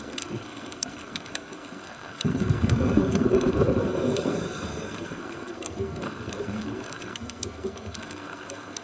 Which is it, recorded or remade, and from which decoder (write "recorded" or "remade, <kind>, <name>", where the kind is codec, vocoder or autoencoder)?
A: remade, codec, SNAC